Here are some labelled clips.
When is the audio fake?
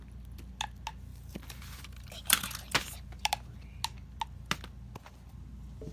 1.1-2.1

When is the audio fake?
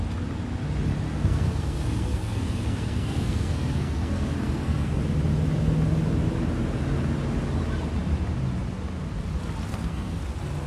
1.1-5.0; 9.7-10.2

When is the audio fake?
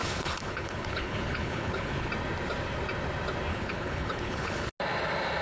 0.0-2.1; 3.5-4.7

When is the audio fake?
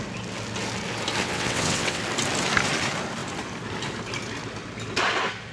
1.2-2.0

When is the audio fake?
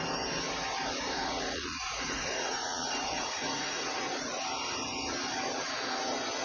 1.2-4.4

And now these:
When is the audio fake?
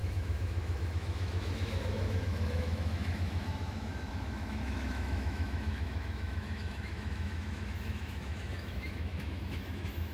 0.0-10.1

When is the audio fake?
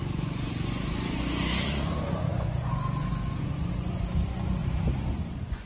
0.0-4.6; 5.1-5.7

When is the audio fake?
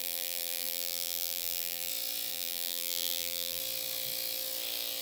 0.0-1.9; 2.3-3.6